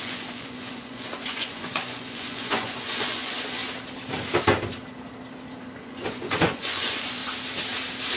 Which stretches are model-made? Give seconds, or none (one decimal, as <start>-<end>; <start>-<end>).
0.0-3.6; 5.8-7.2